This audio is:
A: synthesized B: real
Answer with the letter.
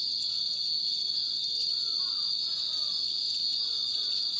B